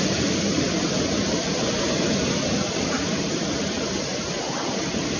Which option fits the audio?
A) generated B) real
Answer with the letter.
B